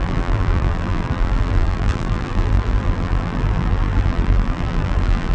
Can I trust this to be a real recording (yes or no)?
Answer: no